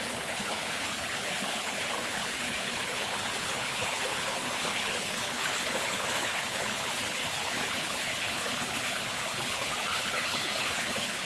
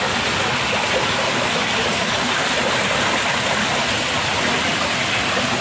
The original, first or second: second